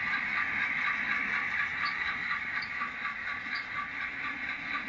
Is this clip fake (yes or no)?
no